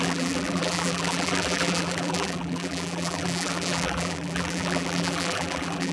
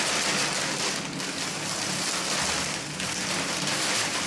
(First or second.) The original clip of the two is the second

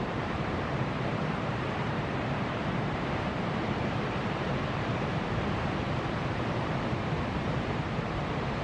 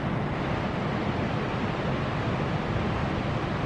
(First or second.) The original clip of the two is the second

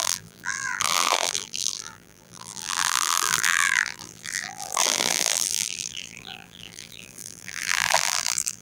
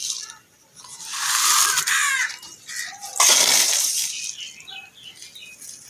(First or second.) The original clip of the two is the second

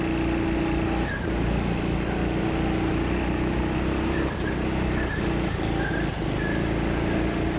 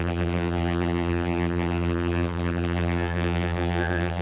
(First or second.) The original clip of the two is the first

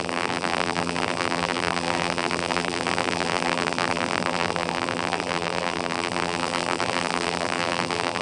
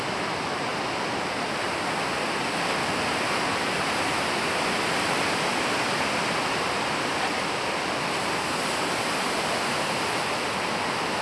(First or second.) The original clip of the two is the second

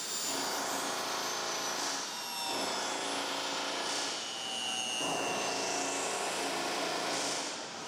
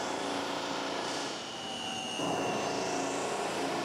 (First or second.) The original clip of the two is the first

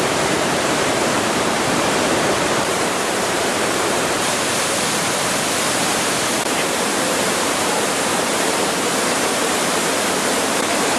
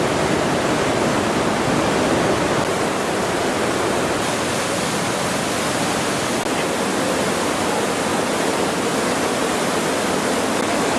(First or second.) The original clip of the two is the second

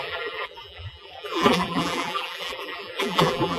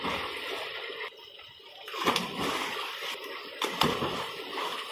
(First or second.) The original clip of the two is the second